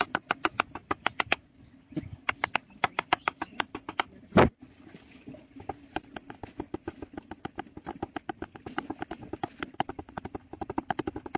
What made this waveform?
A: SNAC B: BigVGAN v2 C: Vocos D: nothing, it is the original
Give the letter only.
B